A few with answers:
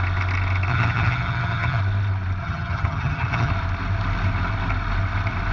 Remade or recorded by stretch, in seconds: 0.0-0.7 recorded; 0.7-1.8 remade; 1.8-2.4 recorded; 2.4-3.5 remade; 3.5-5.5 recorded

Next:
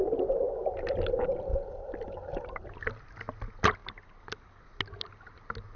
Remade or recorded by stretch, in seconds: 0.0-5.8 recorded

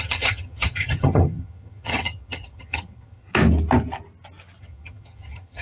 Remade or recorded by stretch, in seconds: 0.0-3.3 remade; 3.3-4.6 recorded; 4.6-5.6 remade

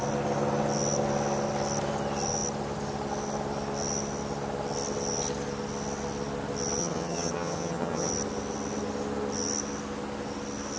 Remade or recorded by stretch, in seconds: 0.0-6.8 recorded; 6.8-8.1 remade; 8.1-10.8 recorded

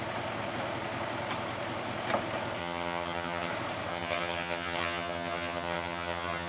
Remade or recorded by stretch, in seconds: 0.0-2.6 recorded; 2.6-3.5 remade; 3.5-3.9 recorded; 3.9-6.5 remade

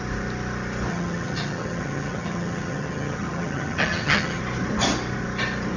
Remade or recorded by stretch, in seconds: 0.0-0.9 recorded; 0.9-4.4 remade; 4.4-5.8 recorded